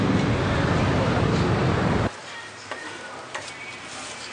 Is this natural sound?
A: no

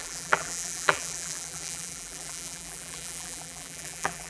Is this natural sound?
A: no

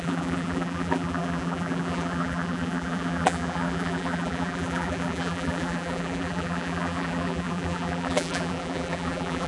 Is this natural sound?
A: no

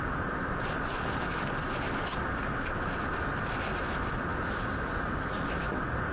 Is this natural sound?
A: yes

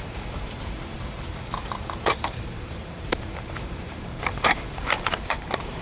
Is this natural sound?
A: no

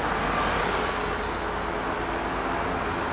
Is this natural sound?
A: yes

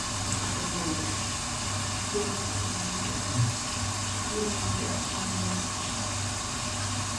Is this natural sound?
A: yes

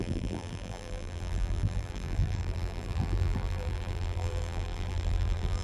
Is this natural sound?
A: no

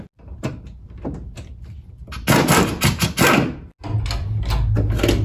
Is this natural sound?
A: yes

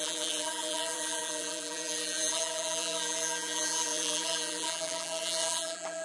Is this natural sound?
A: no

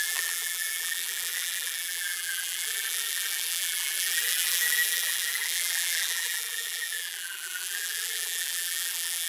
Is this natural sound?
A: no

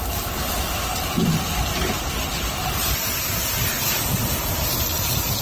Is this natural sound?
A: yes